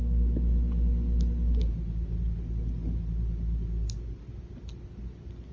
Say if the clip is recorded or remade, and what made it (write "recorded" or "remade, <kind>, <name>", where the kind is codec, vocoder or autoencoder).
recorded